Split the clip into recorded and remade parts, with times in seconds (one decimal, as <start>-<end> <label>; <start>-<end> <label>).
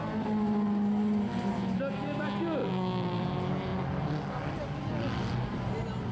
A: 0.0-2.6 recorded; 2.6-3.2 remade; 3.2-6.1 recorded